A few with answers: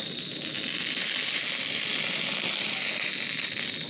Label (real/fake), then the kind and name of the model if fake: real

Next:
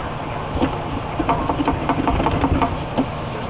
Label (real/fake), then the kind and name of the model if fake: real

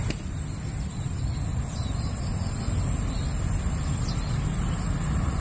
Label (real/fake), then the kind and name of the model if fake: real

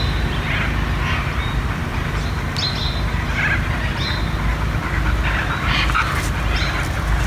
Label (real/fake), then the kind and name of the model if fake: real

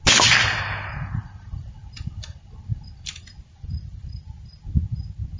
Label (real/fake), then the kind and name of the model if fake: real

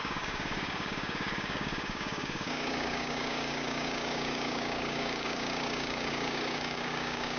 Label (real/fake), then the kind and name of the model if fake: fake, codec, DAC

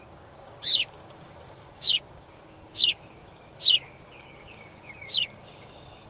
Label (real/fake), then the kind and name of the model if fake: fake, codec, DAC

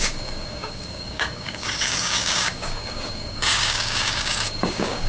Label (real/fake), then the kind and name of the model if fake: fake, codec, DAC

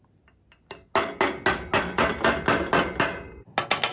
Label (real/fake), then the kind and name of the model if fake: real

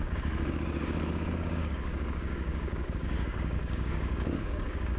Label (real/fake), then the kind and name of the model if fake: fake, codec, DAC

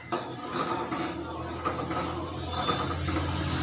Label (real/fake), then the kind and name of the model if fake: real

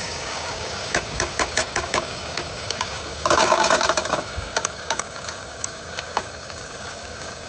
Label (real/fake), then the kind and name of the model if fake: fake, codec, DAC